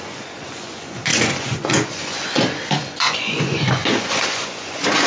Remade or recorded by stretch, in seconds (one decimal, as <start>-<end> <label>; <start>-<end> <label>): 0.0-5.1 remade

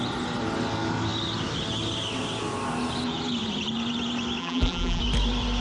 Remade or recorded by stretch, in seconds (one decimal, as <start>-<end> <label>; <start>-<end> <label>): 0.0-4.4 recorded; 4.4-5.0 remade; 5.0-5.6 recorded

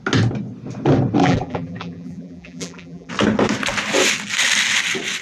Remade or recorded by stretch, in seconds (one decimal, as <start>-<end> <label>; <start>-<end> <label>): 0.0-1.2 recorded; 1.2-3.1 remade; 3.1-5.2 recorded

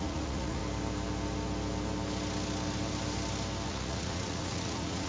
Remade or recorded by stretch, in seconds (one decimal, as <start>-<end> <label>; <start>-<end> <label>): 0.0-0.6 remade; 0.6-3.7 recorded; 3.7-5.1 remade